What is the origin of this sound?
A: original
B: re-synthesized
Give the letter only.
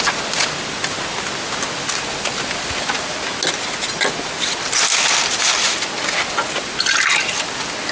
A